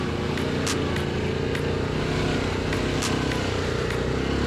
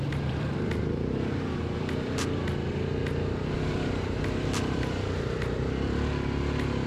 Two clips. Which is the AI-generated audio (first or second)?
second